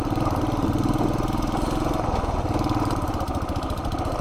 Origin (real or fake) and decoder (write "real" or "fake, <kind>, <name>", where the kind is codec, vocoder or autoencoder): real